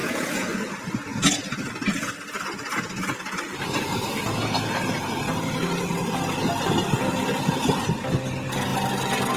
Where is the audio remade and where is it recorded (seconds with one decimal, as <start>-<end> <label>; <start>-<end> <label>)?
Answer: 0.0-0.7 remade; 0.7-9.4 recorded